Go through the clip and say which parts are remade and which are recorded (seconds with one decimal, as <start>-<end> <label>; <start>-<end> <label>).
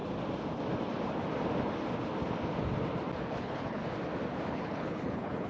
0.0-3.3 recorded; 3.3-3.8 remade; 3.8-4.5 recorded; 4.5-5.5 remade